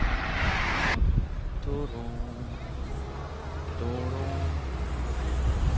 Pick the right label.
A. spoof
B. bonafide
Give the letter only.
B